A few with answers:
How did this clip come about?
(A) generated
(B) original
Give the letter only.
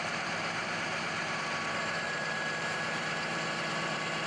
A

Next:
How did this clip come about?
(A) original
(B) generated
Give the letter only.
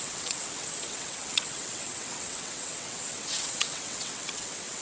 B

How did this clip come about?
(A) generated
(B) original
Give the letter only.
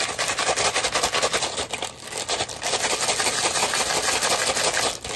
B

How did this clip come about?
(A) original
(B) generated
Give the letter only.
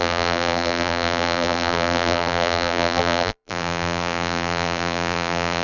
B